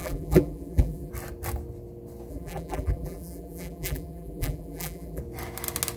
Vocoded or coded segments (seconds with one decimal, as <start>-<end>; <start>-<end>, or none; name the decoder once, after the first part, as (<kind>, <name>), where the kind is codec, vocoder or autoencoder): 0.0-1.1 (vocoder, BigVGAN v2); 2.3-5.2